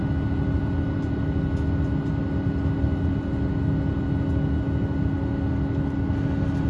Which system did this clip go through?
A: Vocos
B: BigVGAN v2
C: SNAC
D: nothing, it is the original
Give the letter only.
D